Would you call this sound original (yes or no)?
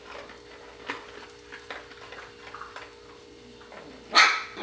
yes